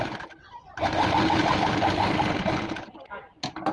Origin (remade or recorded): recorded